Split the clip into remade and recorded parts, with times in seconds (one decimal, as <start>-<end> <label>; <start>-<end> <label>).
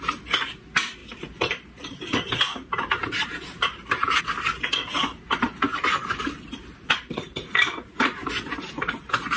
0.0-1.0 recorded; 1.0-4.2 remade; 4.2-5.1 recorded; 5.1-8.3 remade; 8.3-9.4 recorded